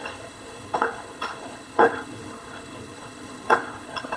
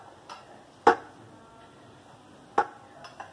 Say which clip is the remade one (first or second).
first